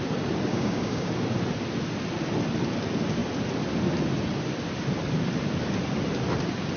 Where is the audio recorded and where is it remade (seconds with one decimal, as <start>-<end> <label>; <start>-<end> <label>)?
0.0-0.5 recorded; 0.5-1.1 remade; 1.1-6.8 recorded